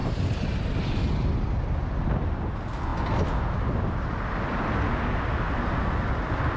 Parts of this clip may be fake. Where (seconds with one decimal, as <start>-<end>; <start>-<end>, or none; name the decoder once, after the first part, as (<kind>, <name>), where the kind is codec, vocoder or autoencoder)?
0.0-0.8 (vocoder, BigVGAN v2)